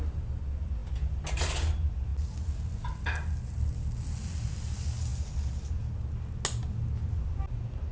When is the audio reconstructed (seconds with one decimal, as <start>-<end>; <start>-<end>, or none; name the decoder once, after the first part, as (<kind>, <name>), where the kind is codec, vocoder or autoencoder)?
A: none